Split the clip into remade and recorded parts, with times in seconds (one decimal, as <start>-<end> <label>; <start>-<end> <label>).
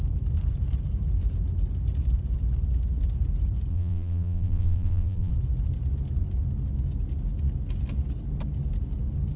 0.0-3.7 recorded; 3.7-5.3 remade; 5.3-9.4 recorded